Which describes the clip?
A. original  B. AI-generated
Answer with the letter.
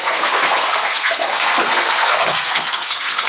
B